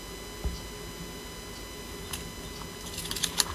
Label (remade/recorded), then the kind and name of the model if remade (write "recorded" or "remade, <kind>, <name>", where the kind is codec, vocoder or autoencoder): recorded